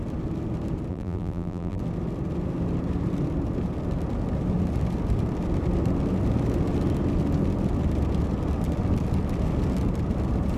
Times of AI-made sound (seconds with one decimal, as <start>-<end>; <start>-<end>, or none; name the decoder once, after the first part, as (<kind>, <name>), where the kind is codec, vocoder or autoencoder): 0.9-1.8 (vocoder, BigVGAN v2)